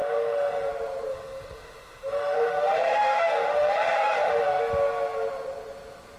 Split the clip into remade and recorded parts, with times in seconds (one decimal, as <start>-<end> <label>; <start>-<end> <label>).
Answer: 0.0-0.7 remade; 0.7-1.1 recorded; 1.1-4.6 remade; 4.6-6.2 recorded